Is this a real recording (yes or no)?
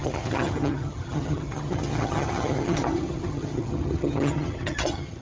no